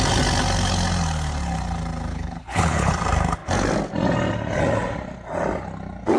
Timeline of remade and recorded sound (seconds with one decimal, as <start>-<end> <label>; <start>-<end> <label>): 0.0-2.1 recorded; 2.1-2.9 remade; 2.9-6.2 recorded